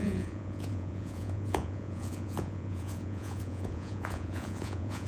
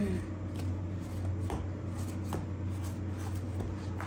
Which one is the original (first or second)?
second